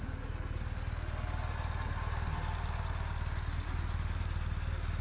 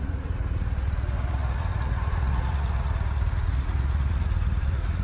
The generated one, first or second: second